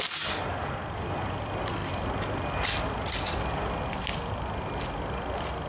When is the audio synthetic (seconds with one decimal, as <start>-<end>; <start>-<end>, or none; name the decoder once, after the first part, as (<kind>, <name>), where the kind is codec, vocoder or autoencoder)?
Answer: none